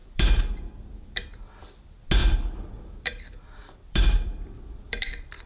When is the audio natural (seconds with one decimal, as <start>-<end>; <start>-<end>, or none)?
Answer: 1.6-2.2